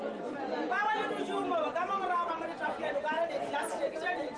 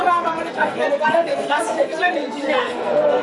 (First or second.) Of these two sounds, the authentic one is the first